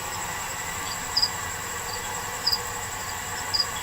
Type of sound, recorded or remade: remade